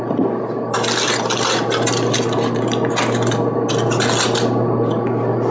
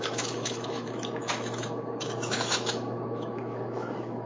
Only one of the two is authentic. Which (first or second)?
first